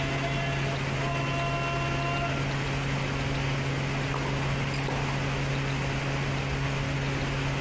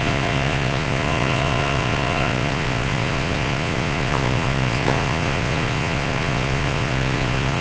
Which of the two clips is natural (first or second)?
first